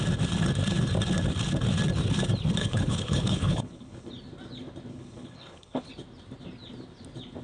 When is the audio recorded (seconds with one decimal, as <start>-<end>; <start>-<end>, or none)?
0.0-2.6; 4.1-4.9; 5.9-7.4